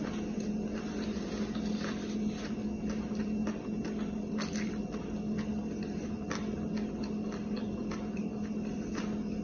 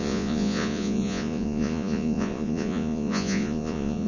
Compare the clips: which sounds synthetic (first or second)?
second